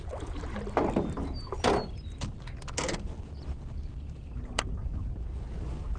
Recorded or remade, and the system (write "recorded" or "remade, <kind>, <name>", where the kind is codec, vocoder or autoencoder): recorded